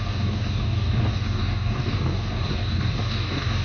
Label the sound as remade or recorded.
remade